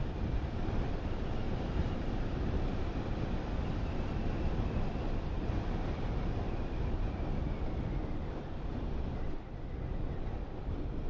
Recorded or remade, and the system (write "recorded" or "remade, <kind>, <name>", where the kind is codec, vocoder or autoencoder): recorded